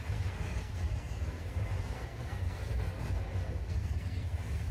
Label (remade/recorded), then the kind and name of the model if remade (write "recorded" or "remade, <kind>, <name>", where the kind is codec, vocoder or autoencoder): remade, codec, SNAC